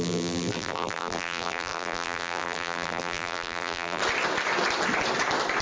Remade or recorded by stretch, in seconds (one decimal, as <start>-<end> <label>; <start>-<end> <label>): 0.0-4.0 remade; 4.0-5.6 recorded